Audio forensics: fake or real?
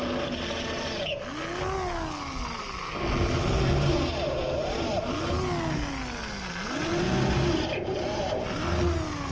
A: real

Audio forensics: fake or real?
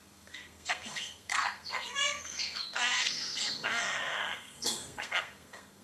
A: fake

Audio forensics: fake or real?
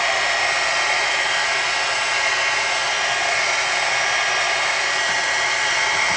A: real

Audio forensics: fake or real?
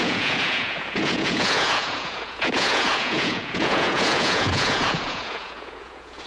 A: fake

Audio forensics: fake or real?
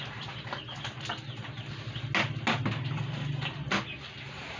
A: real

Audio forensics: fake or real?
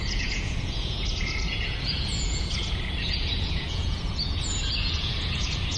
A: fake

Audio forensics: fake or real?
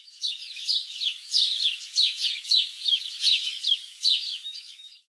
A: fake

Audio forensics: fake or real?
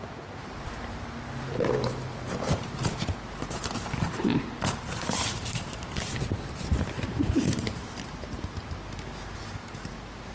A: fake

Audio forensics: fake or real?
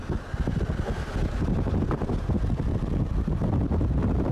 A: real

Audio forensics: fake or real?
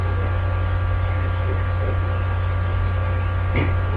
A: real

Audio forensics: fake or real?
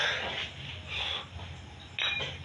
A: real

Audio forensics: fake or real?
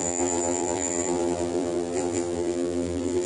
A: fake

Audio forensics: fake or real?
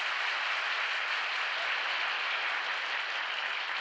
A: real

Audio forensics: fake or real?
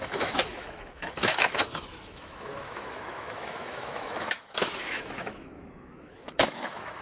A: fake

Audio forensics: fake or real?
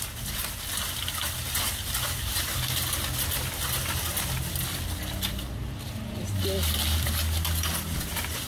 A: real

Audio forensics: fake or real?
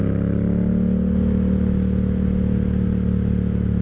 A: real